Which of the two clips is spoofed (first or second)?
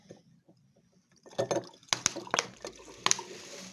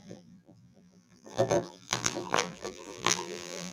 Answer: second